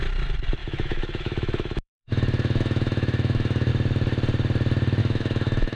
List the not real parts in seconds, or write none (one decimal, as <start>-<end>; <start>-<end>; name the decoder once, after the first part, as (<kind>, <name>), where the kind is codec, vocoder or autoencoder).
0.6-3.7 (autoencoder, DAC-VAE); 5.0-5.8